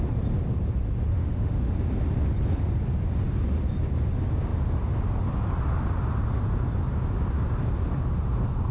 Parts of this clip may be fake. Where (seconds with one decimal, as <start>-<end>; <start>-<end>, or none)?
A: 1.1-1.7